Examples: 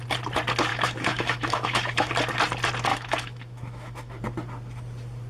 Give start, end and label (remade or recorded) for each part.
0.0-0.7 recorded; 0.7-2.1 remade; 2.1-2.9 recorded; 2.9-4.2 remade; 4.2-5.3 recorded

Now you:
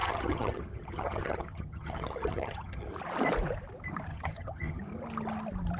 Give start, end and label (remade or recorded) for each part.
0.0-2.9 remade; 2.9-4.1 recorded; 4.1-4.8 remade; 4.8-5.8 recorded